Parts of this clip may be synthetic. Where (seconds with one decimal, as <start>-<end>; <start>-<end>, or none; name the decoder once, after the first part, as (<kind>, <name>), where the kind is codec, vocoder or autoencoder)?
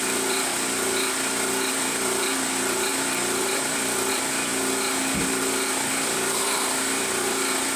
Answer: 0.0-0.5 (vocoder, BigVGAN v2); 1.7-4.5; 5.3-7.8